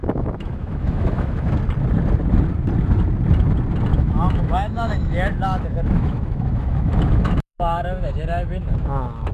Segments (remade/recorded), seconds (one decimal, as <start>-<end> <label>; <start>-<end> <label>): 0.0-1.5 remade; 1.5-3.9 recorded; 3.9-9.3 remade